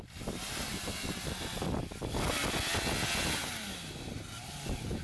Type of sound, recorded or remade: recorded